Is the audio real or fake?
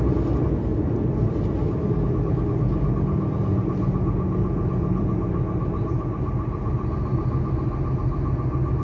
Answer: real